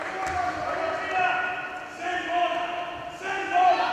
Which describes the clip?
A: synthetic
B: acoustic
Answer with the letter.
B